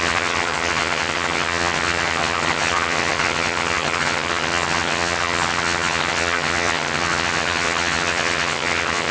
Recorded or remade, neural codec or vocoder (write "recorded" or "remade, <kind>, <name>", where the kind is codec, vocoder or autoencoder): remade, vocoder, HiFi-GAN